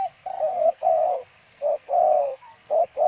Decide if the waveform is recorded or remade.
remade